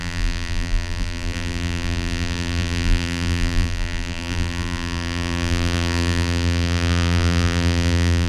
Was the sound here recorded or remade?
remade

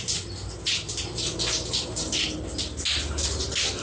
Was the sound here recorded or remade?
recorded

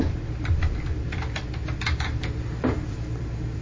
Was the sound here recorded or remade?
remade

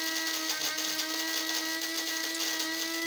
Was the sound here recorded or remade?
recorded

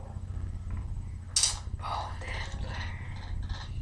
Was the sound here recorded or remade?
recorded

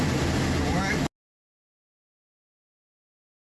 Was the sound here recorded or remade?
recorded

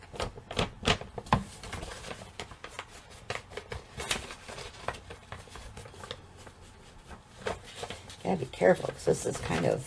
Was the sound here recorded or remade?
recorded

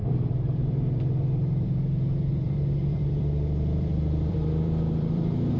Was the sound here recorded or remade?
remade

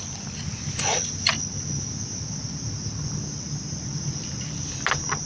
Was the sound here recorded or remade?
recorded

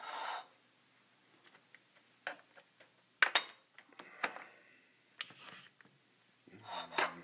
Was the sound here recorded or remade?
recorded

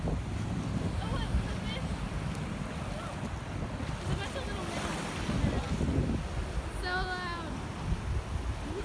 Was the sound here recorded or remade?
recorded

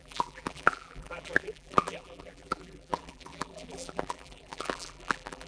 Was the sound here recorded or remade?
remade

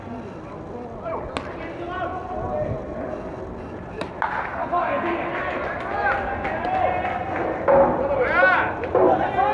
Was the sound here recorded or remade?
recorded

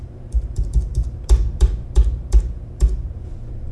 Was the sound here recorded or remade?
remade